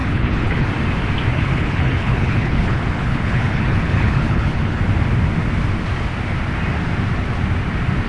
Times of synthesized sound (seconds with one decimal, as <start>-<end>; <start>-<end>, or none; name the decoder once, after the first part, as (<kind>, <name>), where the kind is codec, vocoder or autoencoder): 0.0-0.7 (codec, HILCodec); 1.3-4.8